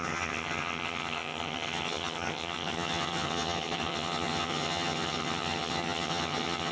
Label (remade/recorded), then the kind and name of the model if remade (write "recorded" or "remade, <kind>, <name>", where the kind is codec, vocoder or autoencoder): remade, vocoder, HiFi-GAN